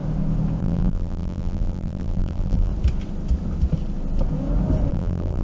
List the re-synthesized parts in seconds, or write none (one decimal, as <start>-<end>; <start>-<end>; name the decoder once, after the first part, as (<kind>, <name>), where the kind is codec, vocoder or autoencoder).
0.6-2.7 (vocoder, BigVGAN v2); 4.9-5.4